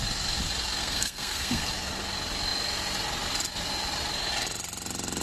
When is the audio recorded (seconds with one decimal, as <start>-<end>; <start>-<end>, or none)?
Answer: 0.0-0.8; 1.7-5.2